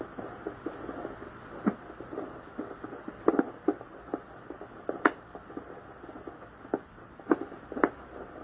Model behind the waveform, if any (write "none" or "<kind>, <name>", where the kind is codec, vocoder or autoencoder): none